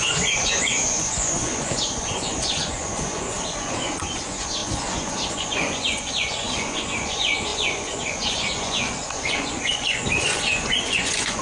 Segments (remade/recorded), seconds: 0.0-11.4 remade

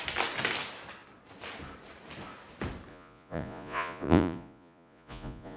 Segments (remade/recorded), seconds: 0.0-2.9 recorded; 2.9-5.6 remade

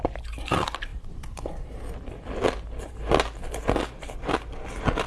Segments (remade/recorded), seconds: 0.0-5.1 recorded

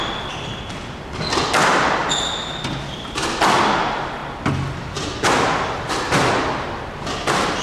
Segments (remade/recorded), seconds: 0.0-2.0 recorded; 2.0-3.6 remade; 3.6-7.6 recorded

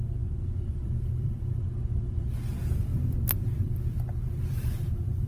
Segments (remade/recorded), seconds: 0.0-0.7 recorded; 0.7-1.6 remade; 1.6-2.9 recorded; 2.9-5.3 remade

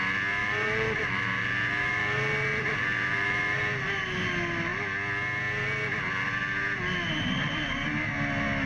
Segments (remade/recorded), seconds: 0.0-0.4 recorded; 0.4-3.6 remade; 3.6-8.7 recorded

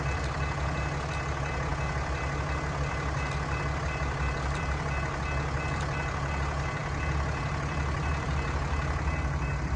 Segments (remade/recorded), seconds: 0.0-9.8 recorded